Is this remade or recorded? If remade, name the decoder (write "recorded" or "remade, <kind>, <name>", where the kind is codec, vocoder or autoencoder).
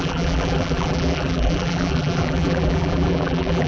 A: remade, vocoder, BigVGAN v2